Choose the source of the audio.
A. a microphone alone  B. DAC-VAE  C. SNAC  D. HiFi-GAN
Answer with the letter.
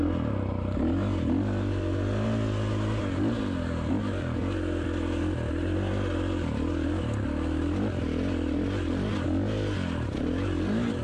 A